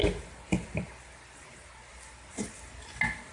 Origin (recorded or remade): recorded